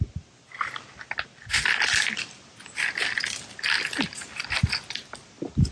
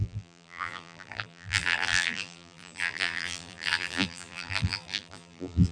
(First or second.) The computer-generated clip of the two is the second